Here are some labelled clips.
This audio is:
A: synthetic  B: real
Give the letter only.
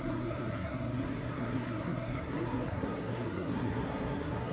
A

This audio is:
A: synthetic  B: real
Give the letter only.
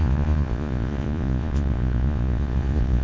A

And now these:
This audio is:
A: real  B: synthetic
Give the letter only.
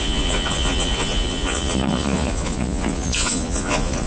B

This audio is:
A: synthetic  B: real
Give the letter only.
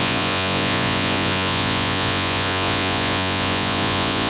A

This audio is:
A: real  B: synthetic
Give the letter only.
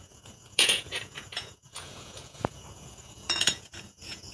B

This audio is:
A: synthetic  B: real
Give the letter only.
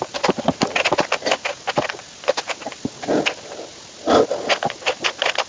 B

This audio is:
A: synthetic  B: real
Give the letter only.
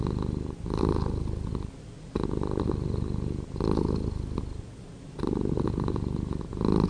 B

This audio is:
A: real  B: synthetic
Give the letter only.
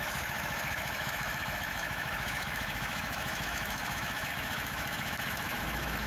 B